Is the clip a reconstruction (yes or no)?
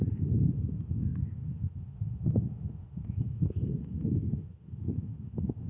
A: yes